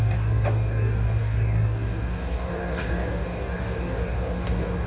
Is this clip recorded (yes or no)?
no